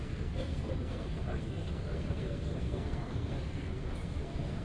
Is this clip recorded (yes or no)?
no